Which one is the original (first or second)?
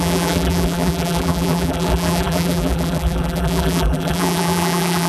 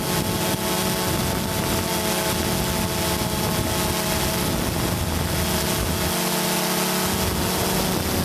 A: second